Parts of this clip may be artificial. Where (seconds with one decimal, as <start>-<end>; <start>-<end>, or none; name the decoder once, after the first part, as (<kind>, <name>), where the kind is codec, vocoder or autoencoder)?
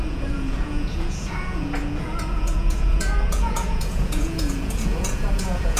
0.0-5.8 (vocoder, Vocos)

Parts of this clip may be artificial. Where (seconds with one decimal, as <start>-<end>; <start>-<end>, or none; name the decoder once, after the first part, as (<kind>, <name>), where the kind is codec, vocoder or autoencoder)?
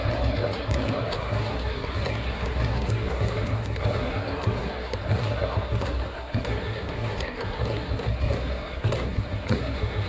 0.0-10.1 (codec, SNAC)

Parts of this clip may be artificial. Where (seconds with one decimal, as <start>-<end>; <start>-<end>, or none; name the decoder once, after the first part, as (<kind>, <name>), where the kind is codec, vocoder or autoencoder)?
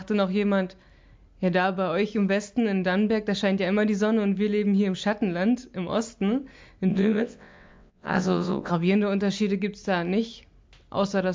6.9-8.7 (vocoder, WaveNeXt)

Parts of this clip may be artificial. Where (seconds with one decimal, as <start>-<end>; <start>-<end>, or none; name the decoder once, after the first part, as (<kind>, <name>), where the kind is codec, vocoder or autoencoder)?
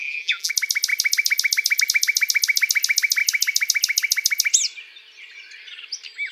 0.0-0.5 (vocoder, BigVGAN v2)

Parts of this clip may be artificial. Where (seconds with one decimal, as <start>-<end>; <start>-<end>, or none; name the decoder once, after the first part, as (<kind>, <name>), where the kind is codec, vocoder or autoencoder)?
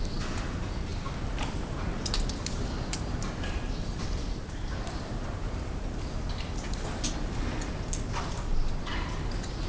none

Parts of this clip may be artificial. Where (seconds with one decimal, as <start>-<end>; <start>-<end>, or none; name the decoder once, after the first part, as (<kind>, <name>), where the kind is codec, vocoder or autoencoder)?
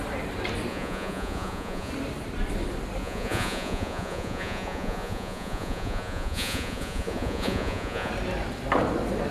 0.7-1.9 (vocoder, Vocos); 3.0-8.1